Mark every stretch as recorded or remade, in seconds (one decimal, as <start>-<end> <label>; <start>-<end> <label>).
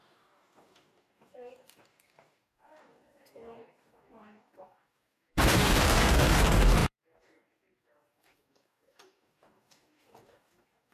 0.0-10.9 remade